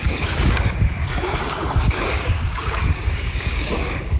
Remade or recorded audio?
remade